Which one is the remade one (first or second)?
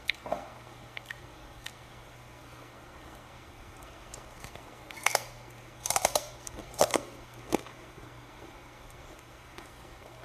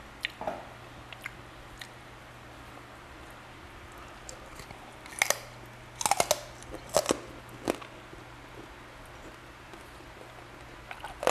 first